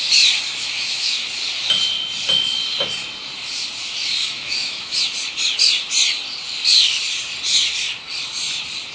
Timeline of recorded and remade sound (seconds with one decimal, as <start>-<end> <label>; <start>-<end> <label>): 0.0-0.6 recorded; 0.6-1.3 remade; 1.3-4.2 recorded; 4.2-5.0 remade; 5.0-8.9 recorded